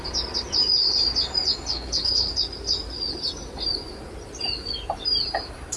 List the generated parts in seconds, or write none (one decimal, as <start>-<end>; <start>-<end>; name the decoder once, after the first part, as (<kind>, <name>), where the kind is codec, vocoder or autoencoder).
1.7-2.3 (codec, HILCodec)